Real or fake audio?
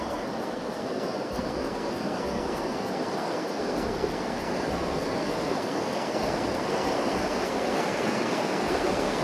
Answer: fake